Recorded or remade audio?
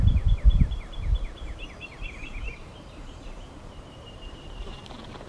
remade